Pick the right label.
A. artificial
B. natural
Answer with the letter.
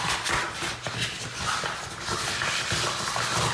B